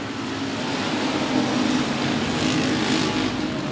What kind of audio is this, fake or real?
real